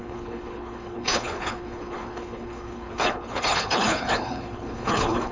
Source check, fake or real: fake